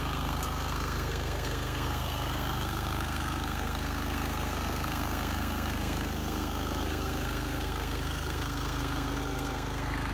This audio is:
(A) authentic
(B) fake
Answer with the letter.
B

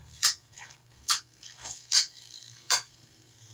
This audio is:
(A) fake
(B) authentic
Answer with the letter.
A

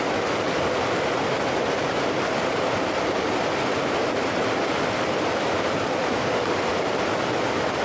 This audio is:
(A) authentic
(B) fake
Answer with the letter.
A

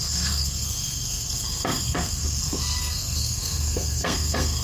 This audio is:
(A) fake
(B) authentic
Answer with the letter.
A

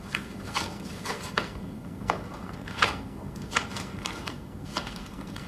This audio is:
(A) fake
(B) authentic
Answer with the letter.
A